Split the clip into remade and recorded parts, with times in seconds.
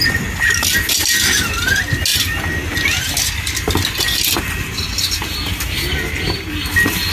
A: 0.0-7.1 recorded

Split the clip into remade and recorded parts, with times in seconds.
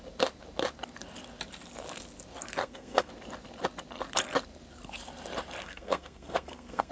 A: 0.0-2.6 recorded; 2.6-3.1 remade; 3.1-5.6 recorded; 5.6-6.9 remade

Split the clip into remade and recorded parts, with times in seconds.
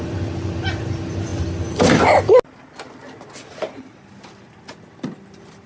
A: 0.0-5.7 recorded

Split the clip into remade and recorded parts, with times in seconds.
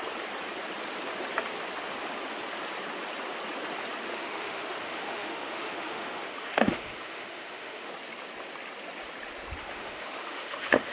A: 0.0-4.1 recorded; 4.1-7.9 remade; 7.9-9.6 recorded; 9.6-10.9 remade